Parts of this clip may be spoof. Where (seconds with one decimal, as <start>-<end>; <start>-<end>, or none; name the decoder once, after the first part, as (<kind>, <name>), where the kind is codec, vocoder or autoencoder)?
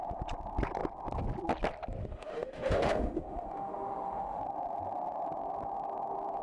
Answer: 2.0-4.4 (autoencoder, DAC-VAE)